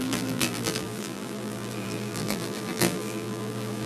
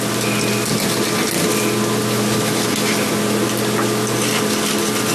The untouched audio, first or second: second